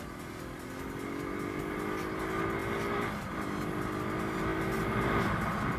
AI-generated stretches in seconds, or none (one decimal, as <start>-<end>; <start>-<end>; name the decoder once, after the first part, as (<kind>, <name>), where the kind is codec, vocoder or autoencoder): none